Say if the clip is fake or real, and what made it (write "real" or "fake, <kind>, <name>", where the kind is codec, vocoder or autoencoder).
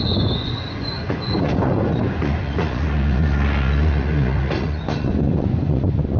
fake, vocoder, Vocos